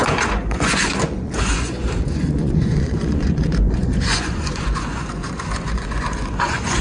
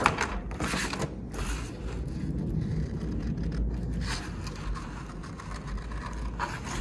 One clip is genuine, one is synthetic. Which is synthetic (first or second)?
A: first